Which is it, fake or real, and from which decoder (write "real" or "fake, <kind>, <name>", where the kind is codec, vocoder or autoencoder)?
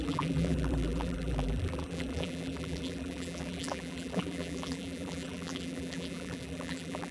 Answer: fake, vocoder, BigVGAN v2